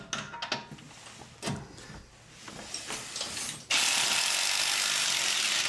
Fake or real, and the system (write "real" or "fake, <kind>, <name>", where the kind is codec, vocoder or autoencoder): real